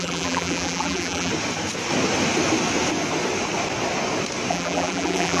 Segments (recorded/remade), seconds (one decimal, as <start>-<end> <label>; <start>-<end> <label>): 0.0-1.3 remade; 1.3-4.5 recorded; 4.5-5.4 remade